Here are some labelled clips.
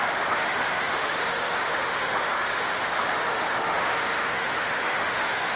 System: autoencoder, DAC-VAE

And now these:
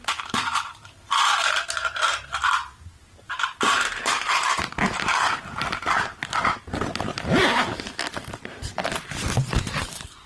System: none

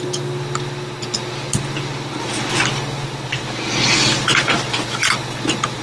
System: none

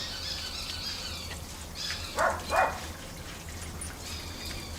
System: none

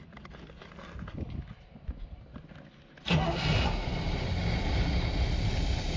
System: none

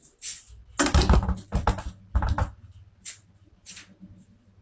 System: none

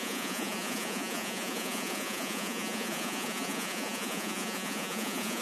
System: vocoder, Vocos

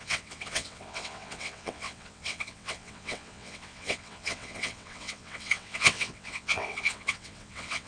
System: vocoder, WaveNeXt